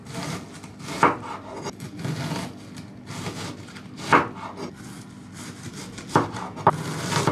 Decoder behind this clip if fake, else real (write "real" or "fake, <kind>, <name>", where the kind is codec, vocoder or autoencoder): real